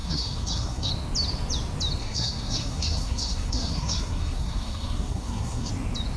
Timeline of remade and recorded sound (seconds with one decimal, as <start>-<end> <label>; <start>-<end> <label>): 0.0-0.9 remade; 0.9-2.0 recorded; 2.0-5.7 remade; 5.7-6.2 recorded